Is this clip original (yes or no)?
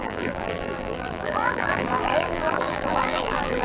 no